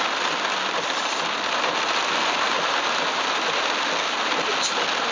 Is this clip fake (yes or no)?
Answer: no